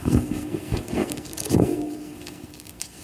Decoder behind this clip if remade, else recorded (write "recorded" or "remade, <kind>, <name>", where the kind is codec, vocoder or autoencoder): remade, codec, SNAC